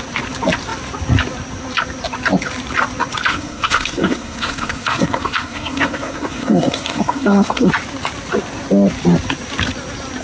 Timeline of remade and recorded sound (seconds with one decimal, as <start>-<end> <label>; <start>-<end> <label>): 0.0-3.3 recorded; 3.3-7.7 remade; 7.7-10.2 recorded